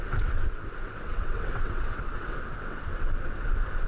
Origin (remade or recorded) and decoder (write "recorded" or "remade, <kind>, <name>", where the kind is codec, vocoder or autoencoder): remade, vocoder, WaveNeXt